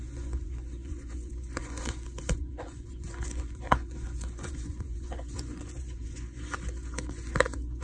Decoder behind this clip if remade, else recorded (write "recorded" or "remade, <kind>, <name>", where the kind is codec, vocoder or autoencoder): remade, vocoder, Vocos